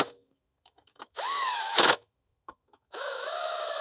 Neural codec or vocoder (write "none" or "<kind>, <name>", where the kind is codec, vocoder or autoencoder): autoencoder, DAC-VAE